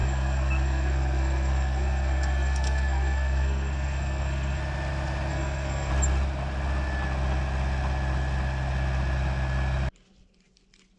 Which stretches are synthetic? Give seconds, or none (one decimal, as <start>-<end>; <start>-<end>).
0.0-4.6; 5.3-5.9

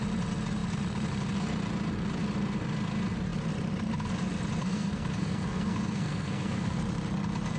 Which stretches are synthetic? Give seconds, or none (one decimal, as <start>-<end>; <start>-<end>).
4.6-6.8

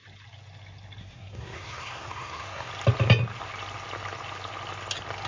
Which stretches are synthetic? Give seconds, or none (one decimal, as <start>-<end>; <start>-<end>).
1.0-2.7

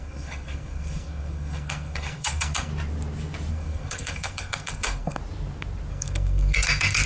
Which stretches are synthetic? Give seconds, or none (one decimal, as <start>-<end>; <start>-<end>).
0.0-2.7; 3.5-5.2; 5.9-7.1

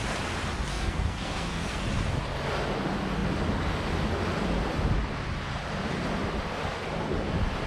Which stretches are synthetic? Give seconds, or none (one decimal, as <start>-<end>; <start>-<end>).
0.7-1.8

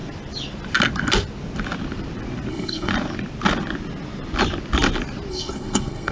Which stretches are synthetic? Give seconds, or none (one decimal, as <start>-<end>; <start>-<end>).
2.5-2.9; 5.3-6.1